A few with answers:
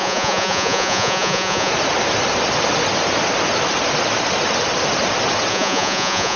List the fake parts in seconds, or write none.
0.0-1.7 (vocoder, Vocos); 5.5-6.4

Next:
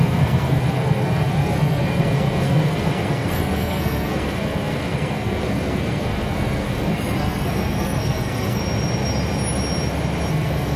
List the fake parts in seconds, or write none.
0.0-8.6 (codec, SNAC); 10.3-10.8

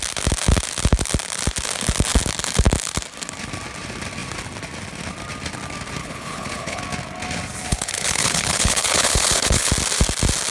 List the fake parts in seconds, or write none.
6.0-6.8 (codec, HILCodec); 7.7-9.7

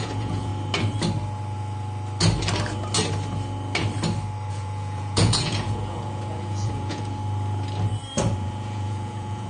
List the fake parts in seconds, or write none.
0.0-0.5 (vocoder, Vocos); 4.5-7.2; 8.3-9.5

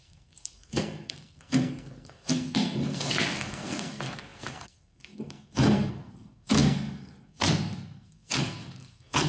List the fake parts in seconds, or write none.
0.0-9.3 (codec, SNAC)

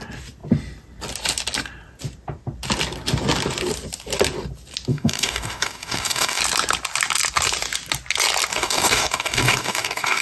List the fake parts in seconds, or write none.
4.9-6.4 (codec, DAC); 8.5-10.2

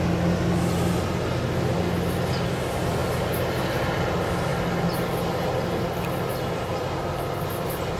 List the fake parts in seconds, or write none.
none